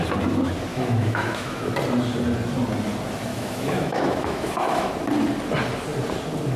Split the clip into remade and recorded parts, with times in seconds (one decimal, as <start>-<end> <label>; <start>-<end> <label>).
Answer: 0.0-0.7 recorded; 0.7-1.7 remade; 1.7-3.3 recorded; 3.3-4.9 remade; 4.9-6.6 recorded